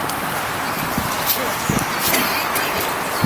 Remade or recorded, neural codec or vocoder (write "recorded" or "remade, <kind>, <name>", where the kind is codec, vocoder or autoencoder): remade, vocoder, BigVGAN v2